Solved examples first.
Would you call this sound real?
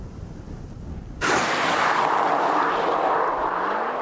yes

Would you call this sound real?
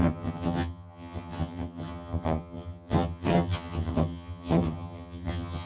no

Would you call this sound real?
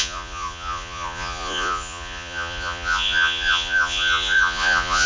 no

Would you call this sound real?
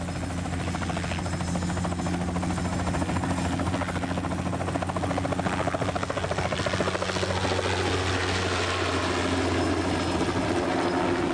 yes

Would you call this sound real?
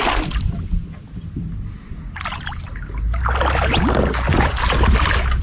yes